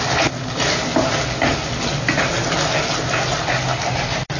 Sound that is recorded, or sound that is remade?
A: recorded